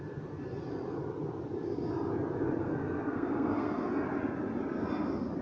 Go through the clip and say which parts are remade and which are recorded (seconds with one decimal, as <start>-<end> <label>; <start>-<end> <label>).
0.0-2.6 recorded; 2.6-3.9 remade; 3.9-5.4 recorded